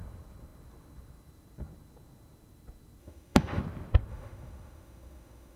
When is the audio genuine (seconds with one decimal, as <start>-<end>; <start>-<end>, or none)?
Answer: 0.0-3.0; 3.6-4.1